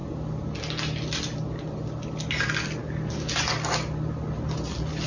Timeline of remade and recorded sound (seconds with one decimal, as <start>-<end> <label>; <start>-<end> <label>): 0.0-5.1 recorded